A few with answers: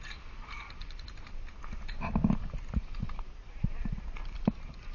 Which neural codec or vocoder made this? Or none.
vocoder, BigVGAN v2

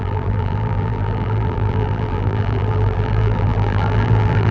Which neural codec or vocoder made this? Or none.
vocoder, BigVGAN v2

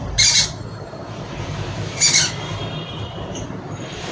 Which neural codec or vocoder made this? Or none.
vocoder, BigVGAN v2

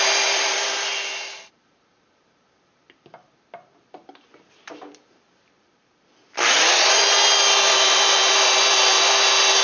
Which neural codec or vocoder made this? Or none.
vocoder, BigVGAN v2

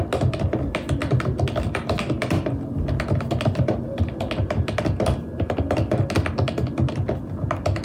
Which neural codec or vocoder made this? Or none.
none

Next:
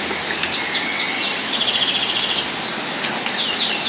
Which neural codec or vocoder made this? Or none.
none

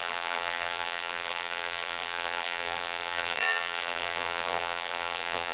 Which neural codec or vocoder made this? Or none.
vocoder, BigVGAN v2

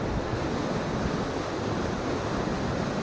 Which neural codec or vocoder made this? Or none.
none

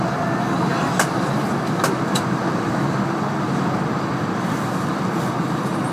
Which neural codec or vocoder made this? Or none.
none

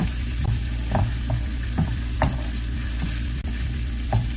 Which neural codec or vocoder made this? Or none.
none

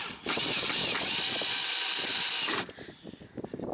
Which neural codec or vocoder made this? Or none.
vocoder, BigVGAN v2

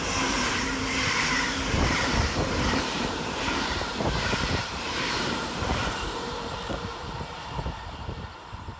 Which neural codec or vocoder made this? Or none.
vocoder, BigVGAN v2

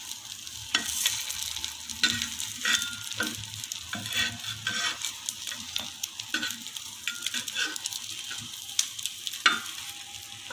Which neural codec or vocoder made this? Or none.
none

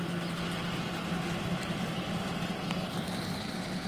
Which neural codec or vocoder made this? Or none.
none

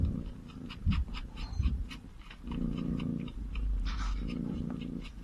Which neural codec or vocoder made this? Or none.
vocoder, BigVGAN v2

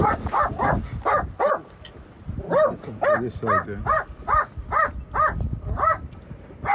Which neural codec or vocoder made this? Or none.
vocoder, BigVGAN v2